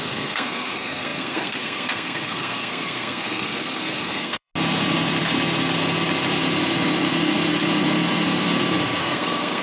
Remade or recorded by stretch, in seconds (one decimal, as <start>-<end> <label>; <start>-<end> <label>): 0.0-4.5 remade; 4.5-9.0 recorded; 9.0-9.6 remade